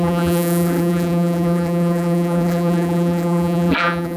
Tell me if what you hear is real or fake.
fake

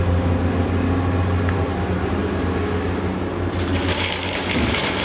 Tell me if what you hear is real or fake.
real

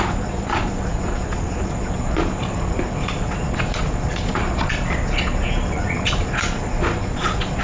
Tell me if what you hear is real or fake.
fake